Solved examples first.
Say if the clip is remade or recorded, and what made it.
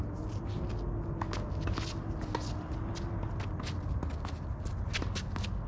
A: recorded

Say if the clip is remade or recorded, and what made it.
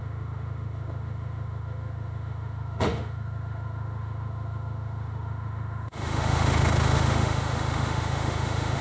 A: remade, autoencoder, DAC-VAE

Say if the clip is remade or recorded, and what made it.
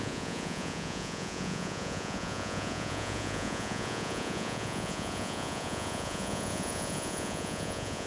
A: remade, vocoder, Vocos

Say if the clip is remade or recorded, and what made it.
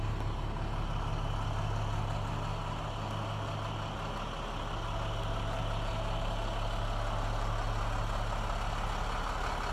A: recorded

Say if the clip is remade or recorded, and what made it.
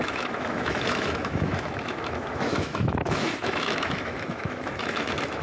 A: remade, autoencoder, DAC-VAE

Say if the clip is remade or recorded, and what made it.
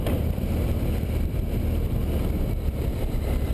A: remade, vocoder, BigVGAN v2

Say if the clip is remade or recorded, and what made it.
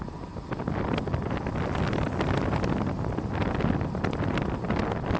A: recorded